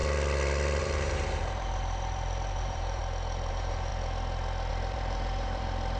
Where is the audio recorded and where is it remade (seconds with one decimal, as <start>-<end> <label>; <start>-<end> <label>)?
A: 0.0-0.8 recorded; 0.8-3.0 remade; 3.0-3.5 recorded; 3.5-3.9 remade; 3.9-4.7 recorded; 4.7-6.0 remade